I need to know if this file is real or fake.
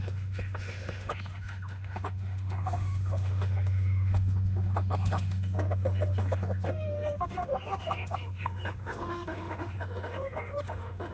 fake